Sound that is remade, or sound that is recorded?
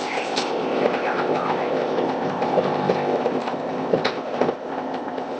remade